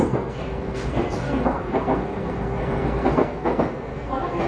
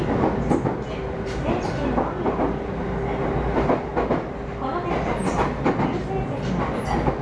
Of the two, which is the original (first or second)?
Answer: second